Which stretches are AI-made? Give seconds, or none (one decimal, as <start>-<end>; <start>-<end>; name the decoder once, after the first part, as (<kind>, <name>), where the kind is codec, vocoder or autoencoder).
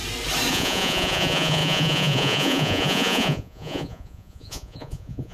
0.5-5.3 (vocoder, Vocos)